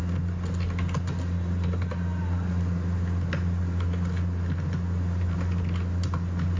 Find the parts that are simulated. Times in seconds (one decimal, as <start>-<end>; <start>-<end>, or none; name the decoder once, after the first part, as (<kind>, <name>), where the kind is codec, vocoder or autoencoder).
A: none